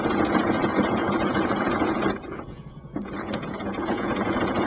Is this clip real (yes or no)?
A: no